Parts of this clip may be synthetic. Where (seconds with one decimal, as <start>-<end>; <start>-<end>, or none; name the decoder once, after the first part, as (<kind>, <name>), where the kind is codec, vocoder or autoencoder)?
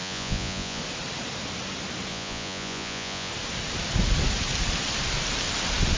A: 0.0-0.8 (vocoder, Vocos); 2.1-3.3